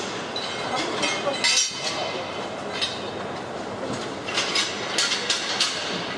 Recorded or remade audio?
recorded